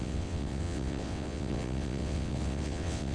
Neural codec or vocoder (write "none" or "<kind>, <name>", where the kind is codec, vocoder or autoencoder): vocoder, WaveNeXt